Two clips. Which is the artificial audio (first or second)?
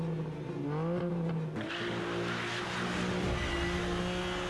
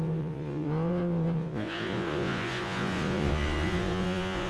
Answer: second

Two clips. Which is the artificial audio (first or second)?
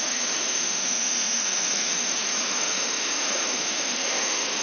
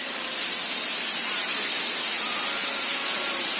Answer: first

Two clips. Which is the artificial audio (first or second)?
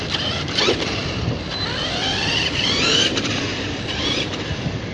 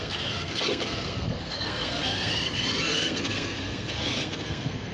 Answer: second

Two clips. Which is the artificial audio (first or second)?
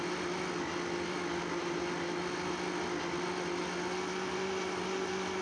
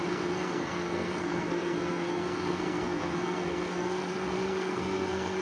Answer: second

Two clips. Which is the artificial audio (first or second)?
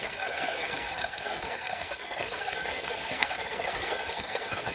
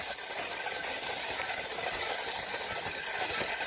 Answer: first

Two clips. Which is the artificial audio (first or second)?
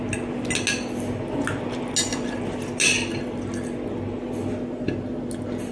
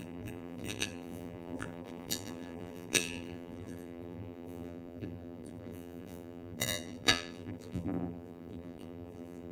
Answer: second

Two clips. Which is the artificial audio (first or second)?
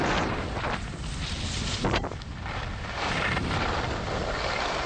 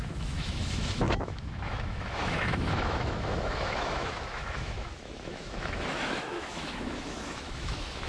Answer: second